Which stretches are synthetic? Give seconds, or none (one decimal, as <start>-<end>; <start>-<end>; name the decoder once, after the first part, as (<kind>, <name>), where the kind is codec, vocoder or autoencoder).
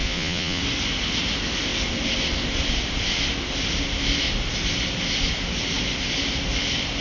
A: 0.0-0.6 (vocoder, Vocos)